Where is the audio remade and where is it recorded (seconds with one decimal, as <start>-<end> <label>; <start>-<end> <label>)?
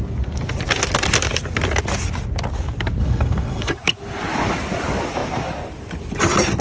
0.0-3.0 recorded; 3.0-3.7 remade; 3.7-6.6 recorded